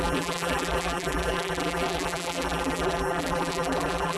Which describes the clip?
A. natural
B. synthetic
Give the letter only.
B